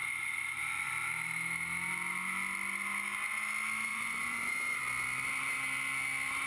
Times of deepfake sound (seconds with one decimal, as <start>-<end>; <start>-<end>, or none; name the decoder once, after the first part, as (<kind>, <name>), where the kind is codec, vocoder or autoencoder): 0.0-0.9 (vocoder, Vocos); 3.9-4.8